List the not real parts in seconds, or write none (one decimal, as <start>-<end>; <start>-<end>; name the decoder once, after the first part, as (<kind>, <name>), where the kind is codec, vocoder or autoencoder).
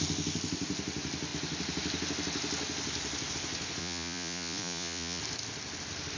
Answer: 3.8-5.2 (vocoder, Vocos)